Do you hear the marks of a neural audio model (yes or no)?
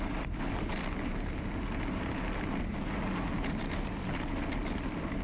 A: no